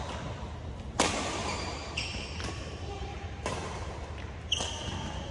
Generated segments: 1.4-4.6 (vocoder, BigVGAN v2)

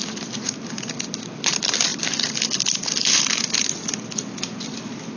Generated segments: none

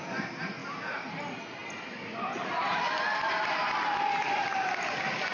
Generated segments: 1.6-3.4 (vocoder, BigVGAN v2)

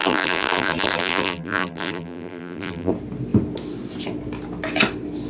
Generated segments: 0.0-2.9 (vocoder, BigVGAN v2)